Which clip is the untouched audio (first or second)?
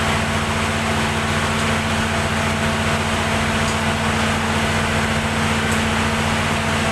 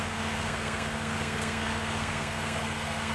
first